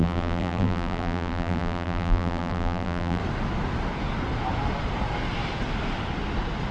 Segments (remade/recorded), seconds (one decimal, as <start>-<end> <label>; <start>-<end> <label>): 0.0-3.2 remade; 3.2-6.7 recorded